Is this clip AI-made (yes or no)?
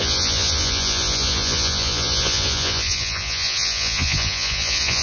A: yes